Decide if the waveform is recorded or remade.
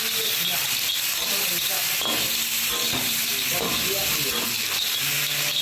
recorded